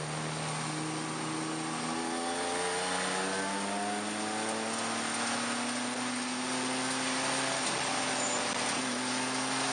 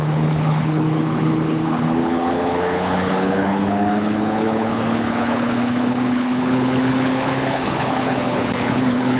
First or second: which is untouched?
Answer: first